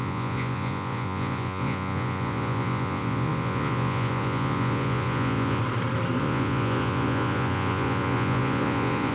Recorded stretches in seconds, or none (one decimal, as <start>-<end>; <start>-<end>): 5.6-6.2